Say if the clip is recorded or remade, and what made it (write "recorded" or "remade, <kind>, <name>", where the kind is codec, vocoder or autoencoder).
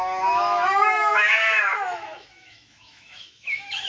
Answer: remade, autoencoder, DAC-VAE